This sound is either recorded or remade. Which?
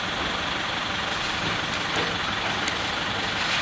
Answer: recorded